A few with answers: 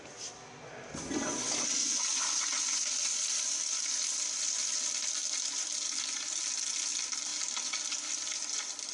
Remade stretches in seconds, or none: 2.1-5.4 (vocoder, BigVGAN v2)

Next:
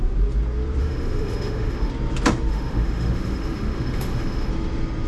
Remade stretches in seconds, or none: 0.8-1.9 (autoencoder, DAC-VAE); 2.5-4.5

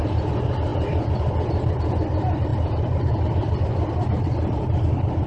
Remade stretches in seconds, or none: 0.0-5.3 (vocoder, BigVGAN v2)

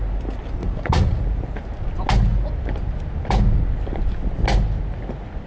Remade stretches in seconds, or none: 0.6-1.2 (vocoder, Vocos)

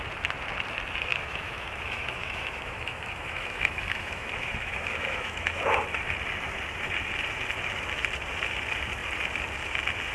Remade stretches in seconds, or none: 1.1-5.6 (autoencoder, DAC-VAE)

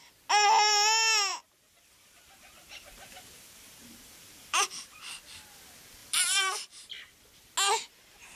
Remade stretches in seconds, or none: 1.3-5.0 (vocoder, BigVGAN v2); 6.0-6.9

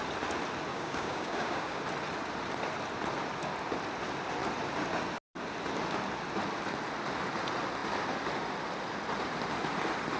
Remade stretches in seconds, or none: 0.7-1.8 (codec, DAC)